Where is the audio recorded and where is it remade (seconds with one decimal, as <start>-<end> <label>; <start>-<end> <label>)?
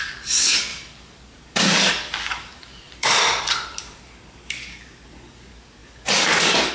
0.0-3.2 remade; 3.2-3.9 recorded; 3.9-6.7 remade